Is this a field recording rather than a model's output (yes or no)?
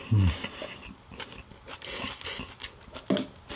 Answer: yes